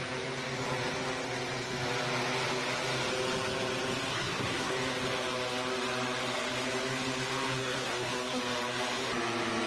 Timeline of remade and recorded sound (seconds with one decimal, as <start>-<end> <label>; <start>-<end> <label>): 0.0-4.1 recorded; 4.1-4.7 remade; 4.7-7.6 recorded; 7.6-8.4 remade; 8.4-9.7 recorded

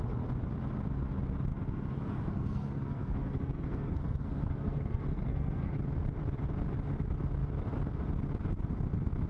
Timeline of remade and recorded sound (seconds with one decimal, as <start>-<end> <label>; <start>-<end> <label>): 0.0-1.5 recorded; 1.5-5.7 remade; 5.7-9.3 recorded

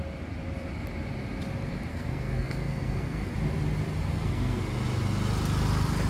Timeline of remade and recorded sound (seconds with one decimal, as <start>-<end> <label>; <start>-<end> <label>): 0.0-1.9 recorded; 1.9-3.3 remade; 3.3-4.1 recorded; 4.1-4.6 remade; 4.6-6.1 recorded

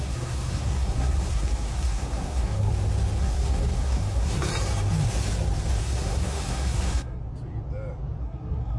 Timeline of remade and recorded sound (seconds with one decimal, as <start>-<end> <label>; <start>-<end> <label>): 0.0-2.7 remade; 2.7-3.2 recorded; 3.2-4.5 remade; 4.5-5.8 recorded; 5.8-7.2 remade; 7.2-8.2 recorded; 8.2-8.8 remade